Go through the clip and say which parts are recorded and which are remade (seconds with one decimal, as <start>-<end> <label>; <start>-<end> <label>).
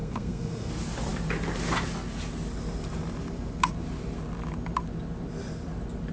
0.0-0.7 remade; 0.7-6.1 recorded